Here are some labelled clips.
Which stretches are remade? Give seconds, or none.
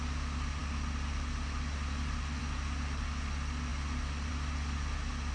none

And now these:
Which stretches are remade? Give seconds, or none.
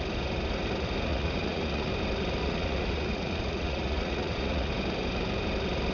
1.1-1.9 (vocoder, Vocos); 2.4-4.7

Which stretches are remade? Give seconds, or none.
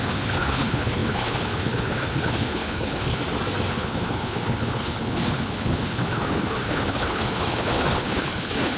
0.0-3.2 (codec, HILCodec); 3.7-8.8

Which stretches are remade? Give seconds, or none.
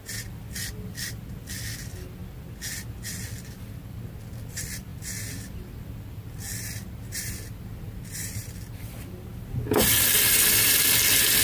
0.0-2.2 (vocoder, BigVGAN v2); 3.5-9.3; 9.8-11.4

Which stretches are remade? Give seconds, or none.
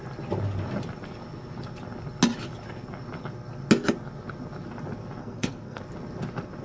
5.2-5.8 (codec, SNAC)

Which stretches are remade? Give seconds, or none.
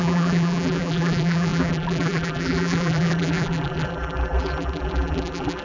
0.0-5.6 (vocoder, BigVGAN v2)